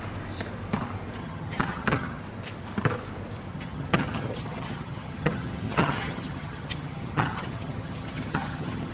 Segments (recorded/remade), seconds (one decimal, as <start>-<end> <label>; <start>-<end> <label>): 0.0-1.2 recorded; 1.2-2.2 remade; 2.2-3.5 recorded; 3.5-8.9 remade